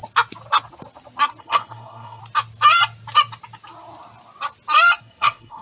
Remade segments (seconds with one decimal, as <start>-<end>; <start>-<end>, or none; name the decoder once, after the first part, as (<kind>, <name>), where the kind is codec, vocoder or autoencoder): 1.4-2.2 (codec, SNAC); 5.0-5.6